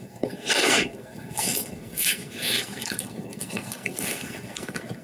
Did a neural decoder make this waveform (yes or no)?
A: yes